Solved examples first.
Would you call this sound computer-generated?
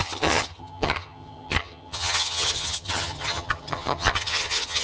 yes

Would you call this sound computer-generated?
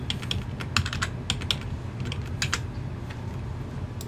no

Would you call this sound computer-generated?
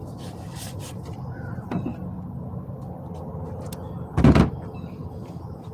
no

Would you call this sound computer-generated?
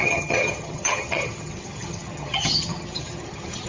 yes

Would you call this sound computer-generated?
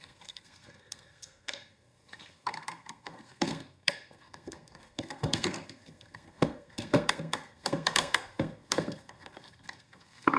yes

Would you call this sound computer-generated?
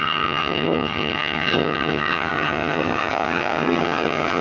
yes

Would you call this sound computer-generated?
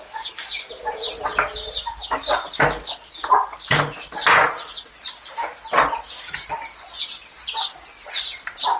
no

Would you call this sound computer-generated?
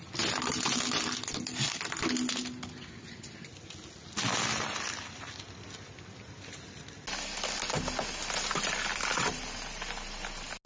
no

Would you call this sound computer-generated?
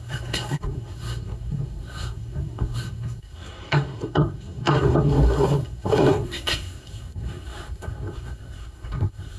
yes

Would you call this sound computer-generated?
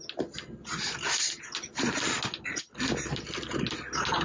no